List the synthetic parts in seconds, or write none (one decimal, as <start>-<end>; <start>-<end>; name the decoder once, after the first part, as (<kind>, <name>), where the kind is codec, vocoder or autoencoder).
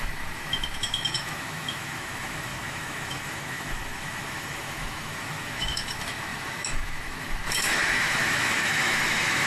0.0-9.5 (autoencoder, DAC-VAE)